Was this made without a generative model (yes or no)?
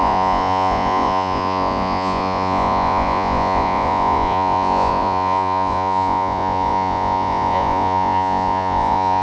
no